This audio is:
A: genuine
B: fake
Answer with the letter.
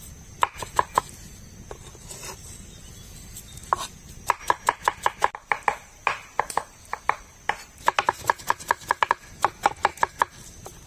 A